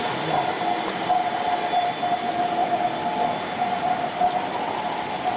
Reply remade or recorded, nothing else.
recorded